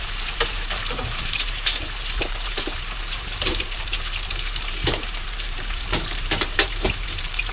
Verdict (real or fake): fake